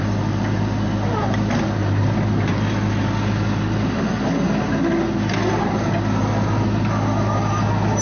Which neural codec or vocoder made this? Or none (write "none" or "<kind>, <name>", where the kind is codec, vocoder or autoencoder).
none